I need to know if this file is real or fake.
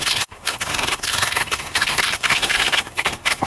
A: fake